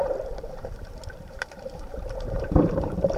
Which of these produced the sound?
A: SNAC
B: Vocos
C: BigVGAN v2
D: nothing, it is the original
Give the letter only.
C